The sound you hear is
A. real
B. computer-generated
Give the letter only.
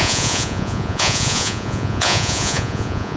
B